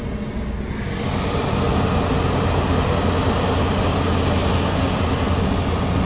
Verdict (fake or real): real